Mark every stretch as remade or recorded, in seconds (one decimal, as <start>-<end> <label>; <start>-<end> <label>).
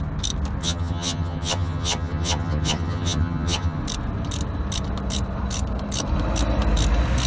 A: 0.0-0.6 recorded; 0.6-3.8 remade; 3.8-7.3 recorded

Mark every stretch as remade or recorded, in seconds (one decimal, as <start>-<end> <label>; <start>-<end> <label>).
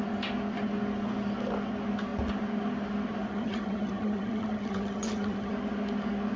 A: 0.0-3.3 recorded; 3.3-5.5 remade; 5.5-6.4 recorded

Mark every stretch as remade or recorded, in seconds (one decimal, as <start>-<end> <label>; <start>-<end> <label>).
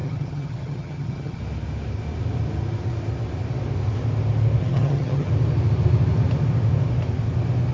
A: 0.0-1.4 remade; 1.4-4.6 recorded; 4.6-5.3 remade; 5.3-7.7 recorded